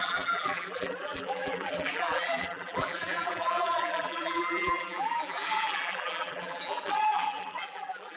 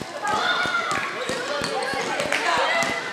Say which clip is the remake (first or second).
first